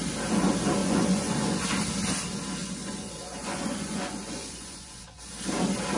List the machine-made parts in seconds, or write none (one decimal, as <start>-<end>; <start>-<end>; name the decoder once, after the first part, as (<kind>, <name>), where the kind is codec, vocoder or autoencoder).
0.8-1.6 (vocoder, Vocos); 2.6-5.3